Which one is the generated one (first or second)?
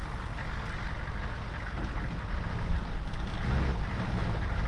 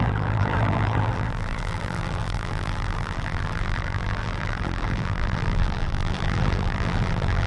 second